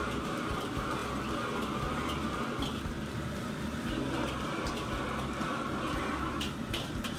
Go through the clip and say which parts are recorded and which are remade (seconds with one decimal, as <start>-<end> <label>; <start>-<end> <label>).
0.0-1.0 remade; 1.0-5.3 recorded; 5.3-7.2 remade